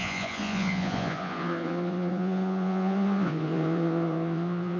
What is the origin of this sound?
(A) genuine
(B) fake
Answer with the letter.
B